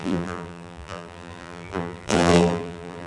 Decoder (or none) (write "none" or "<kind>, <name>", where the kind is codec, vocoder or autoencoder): vocoder, BigVGAN v2